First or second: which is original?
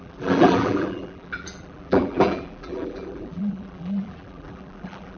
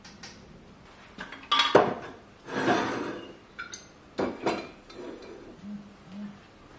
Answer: second